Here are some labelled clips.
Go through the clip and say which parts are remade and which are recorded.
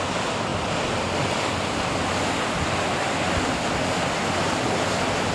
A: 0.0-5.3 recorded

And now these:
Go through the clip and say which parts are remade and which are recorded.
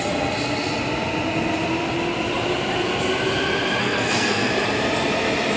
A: 0.0-3.8 recorded; 3.8-4.5 remade; 4.5-5.6 recorded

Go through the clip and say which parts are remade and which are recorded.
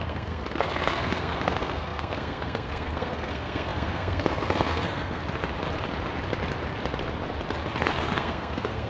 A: 0.0-5.2 remade; 5.2-7.8 recorded; 7.8-8.9 remade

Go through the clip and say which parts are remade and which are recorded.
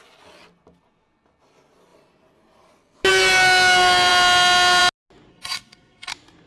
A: 0.0-5.3 recorded; 5.3-6.1 remade; 6.1-6.5 recorded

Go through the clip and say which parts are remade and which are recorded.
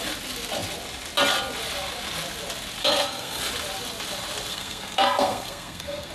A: 0.0-2.8 recorded; 2.8-3.4 remade; 3.4-4.5 recorded; 4.5-6.1 remade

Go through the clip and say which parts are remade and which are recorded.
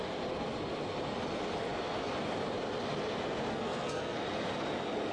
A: 0.0-3.5 recorded; 3.5-4.2 remade; 4.2-5.1 recorded